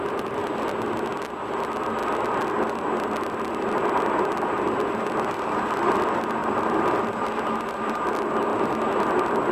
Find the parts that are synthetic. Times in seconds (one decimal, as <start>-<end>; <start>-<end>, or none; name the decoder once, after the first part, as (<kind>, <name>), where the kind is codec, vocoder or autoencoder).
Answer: 0.0-0.4 (vocoder, BigVGAN v2); 1.3-2.0; 5.7-9.5